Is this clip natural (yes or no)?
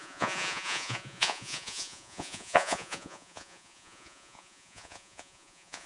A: no